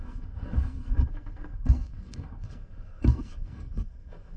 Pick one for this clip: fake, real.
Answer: fake